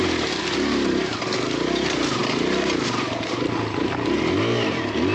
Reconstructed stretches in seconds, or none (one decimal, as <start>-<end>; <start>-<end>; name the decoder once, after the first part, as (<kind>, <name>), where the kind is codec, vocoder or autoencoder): none

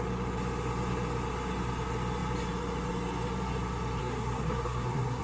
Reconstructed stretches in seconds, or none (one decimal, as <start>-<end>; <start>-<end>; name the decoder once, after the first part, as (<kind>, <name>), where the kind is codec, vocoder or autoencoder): 4.0-5.2 (codec, SNAC)

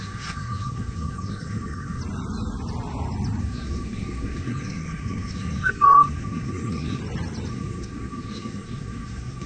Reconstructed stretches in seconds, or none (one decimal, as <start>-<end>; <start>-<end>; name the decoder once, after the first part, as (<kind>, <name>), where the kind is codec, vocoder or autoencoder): 0.0-2.0 (codec, SNAC); 3.4-7.0; 7.5-9.5

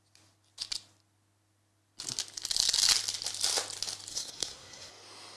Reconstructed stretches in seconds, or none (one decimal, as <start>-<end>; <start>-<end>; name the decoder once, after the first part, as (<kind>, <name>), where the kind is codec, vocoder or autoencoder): 4.1-4.9 (codec, SNAC)

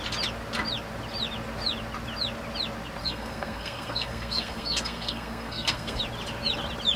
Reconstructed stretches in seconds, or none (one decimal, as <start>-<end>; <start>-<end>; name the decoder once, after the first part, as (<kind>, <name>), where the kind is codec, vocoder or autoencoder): 3.0-6.0 (codec, SNAC)

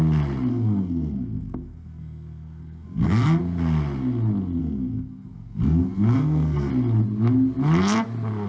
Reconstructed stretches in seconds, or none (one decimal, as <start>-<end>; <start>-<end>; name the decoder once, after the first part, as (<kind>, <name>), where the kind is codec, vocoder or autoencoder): 0.5-3.4 (codec, SNAC); 4.6-6.7